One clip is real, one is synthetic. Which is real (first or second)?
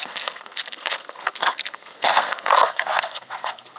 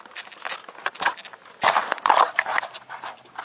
second